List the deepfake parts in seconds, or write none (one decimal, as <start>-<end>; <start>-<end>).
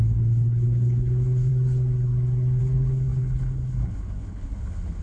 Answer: 0.0-1.5; 2.6-5.0